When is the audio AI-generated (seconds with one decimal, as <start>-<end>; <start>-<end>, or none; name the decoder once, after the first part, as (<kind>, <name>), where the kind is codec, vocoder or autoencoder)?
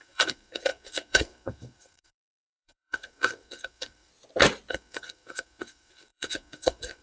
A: 0.0-4.1 (codec, SNAC); 4.7-7.0